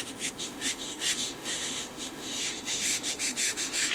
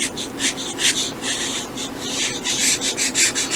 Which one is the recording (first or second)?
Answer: second